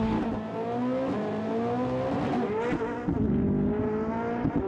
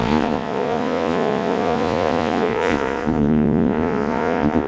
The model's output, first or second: second